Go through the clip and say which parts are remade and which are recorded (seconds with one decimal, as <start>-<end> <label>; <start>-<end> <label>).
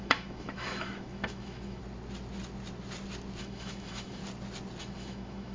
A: 0.0-1.8 remade; 1.8-3.4 recorded; 3.4-4.2 remade; 4.2-4.8 recorded; 4.8-5.5 remade